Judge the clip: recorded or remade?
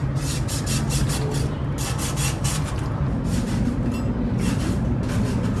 recorded